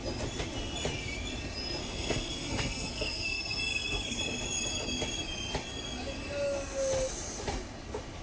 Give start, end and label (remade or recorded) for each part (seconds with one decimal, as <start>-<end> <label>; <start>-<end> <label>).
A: 0.0-1.8 recorded; 1.8-4.2 remade; 4.2-8.2 recorded